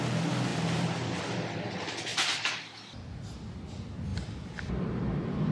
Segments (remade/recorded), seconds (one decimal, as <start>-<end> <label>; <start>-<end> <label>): 0.0-0.5 recorded; 0.5-1.2 remade; 1.2-4.1 recorded; 4.1-5.5 remade